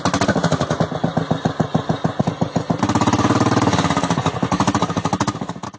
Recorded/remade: recorded